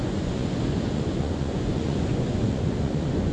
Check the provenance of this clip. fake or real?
fake